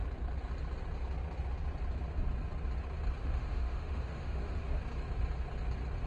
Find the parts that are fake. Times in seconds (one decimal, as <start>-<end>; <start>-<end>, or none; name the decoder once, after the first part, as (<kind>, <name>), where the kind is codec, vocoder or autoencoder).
3.2-4.8 (autoencoder, DAC-VAE)